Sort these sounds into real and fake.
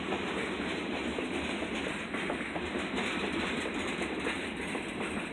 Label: real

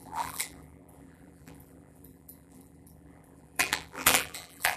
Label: fake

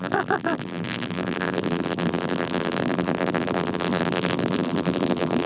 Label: fake